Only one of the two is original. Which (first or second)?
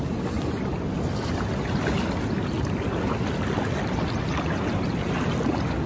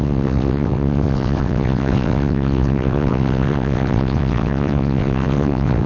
first